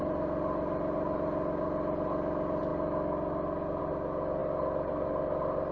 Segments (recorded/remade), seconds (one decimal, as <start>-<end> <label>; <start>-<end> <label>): 0.0-5.7 recorded